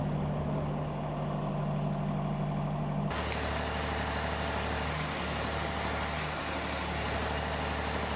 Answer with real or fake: real